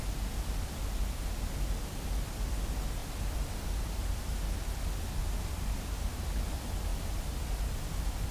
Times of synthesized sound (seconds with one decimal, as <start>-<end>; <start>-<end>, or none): 3.0-3.8; 6.9-7.6